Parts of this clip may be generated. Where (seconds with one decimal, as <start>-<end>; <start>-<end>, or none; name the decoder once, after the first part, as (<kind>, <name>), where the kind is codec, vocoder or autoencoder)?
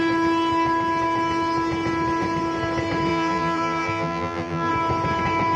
3.1-4.7 (vocoder, BigVGAN v2)